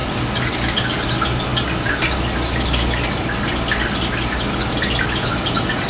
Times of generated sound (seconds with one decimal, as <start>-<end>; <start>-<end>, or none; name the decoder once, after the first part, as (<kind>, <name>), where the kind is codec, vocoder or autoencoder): none